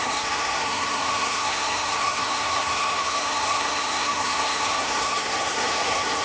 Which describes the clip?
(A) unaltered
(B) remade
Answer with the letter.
B